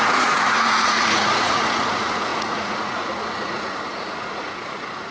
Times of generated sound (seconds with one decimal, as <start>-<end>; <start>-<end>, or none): 0.0-5.1